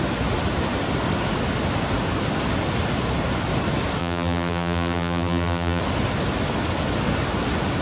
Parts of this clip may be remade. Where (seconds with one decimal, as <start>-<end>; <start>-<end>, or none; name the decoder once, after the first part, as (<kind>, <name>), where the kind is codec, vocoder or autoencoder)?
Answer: 4.0-5.8 (vocoder, BigVGAN v2)